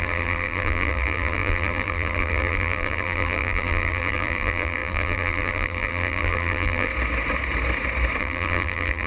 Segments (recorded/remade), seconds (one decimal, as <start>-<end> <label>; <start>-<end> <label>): 0.0-6.9 remade; 6.9-8.2 recorded; 8.2-9.1 remade